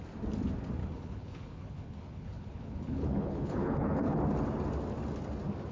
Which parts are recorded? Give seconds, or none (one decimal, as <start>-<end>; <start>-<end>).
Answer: 0.0-0.8; 4.2-5.7

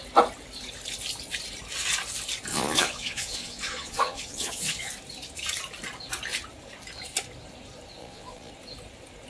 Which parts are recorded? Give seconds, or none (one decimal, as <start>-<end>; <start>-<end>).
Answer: 0.0-2.5; 4.9-8.0; 8.5-9.3